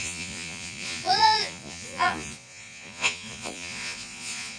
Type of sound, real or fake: fake